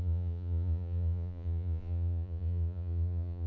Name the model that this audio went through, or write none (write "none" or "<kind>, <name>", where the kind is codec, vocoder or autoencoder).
vocoder, Vocos